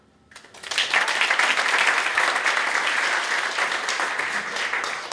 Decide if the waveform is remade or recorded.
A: recorded